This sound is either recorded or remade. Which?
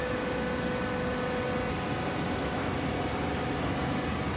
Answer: recorded